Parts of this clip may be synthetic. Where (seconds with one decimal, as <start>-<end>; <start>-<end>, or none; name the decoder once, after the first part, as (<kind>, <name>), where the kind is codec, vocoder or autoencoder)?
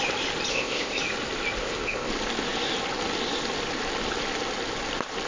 0.5-1.0 (codec, ZipCodec); 1.6-2.1